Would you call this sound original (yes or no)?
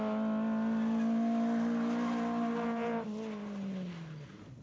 yes